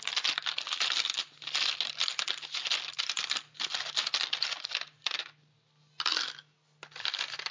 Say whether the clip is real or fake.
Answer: real